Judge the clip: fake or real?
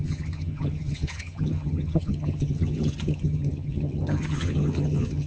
fake